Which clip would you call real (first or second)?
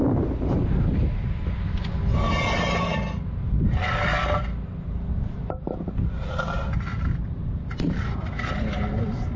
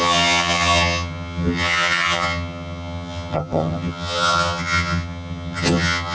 first